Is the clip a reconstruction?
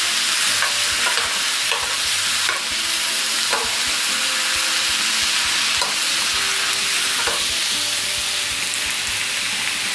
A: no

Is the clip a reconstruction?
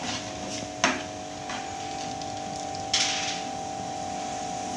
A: no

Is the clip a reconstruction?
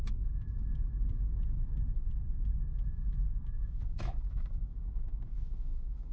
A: yes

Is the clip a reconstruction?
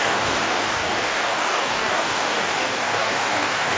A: yes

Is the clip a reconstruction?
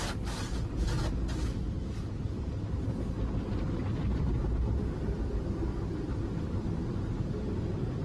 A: no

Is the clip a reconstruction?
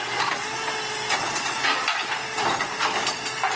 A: no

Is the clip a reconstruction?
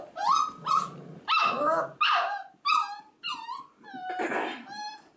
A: no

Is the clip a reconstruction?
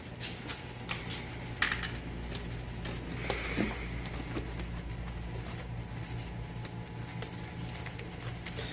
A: no